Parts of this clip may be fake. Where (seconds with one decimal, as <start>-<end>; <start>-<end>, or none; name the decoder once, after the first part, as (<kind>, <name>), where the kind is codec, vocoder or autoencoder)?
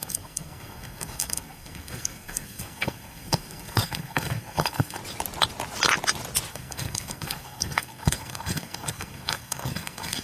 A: 0.0-5.0 (codec, SNAC); 6.5-10.2